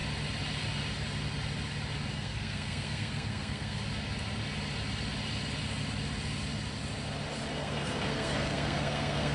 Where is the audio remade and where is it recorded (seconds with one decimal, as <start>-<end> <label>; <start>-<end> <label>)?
0.0-2.1 recorded; 2.1-3.8 remade; 3.8-7.6 recorded; 7.6-9.3 remade